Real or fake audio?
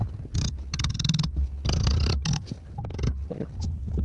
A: real